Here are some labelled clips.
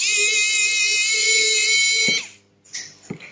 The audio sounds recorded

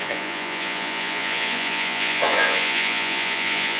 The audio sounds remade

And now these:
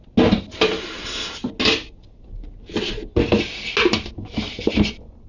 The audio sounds recorded